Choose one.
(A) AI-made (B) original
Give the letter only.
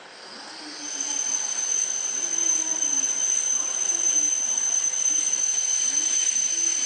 B